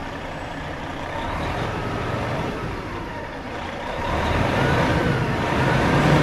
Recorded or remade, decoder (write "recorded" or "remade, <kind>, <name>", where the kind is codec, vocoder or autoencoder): remade, vocoder, BigVGAN v2